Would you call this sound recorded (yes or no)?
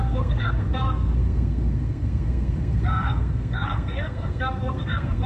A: no